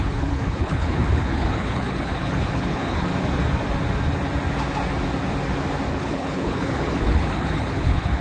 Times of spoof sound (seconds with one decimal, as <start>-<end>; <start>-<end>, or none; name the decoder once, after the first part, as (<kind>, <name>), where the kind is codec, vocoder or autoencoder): 0.0-3.1 (codec, HILCodec); 5.9-8.2